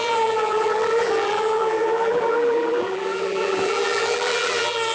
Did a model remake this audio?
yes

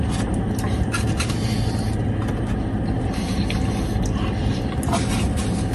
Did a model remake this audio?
no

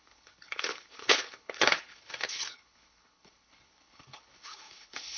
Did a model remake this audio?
yes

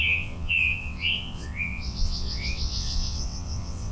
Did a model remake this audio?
yes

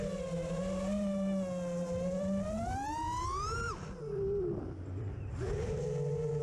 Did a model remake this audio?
no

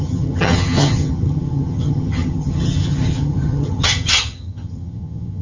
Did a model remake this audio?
yes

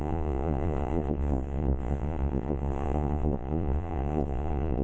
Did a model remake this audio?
yes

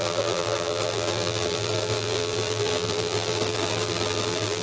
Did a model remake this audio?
yes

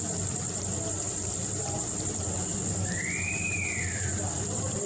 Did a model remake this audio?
no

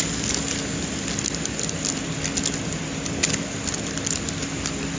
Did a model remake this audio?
no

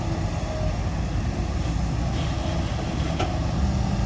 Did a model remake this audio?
no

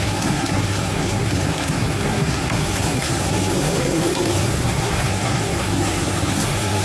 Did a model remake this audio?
yes